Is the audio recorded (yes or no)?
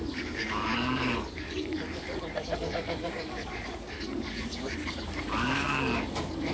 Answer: no